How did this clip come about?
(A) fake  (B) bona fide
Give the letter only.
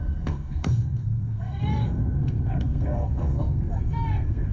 A